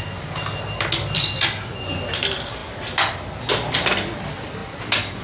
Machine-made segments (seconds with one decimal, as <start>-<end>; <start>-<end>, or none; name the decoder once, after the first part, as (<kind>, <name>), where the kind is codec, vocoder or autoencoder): none